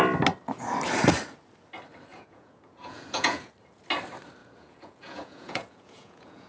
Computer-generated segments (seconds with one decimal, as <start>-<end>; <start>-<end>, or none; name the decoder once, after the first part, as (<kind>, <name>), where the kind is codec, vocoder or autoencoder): 2.1-3.5 (vocoder, Vocos); 4.4-6.5